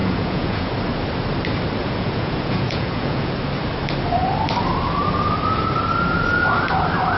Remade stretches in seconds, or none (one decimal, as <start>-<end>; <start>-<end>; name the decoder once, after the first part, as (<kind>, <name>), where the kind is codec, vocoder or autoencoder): 0.0-0.7 (vocoder, Vocos); 1.8-3.3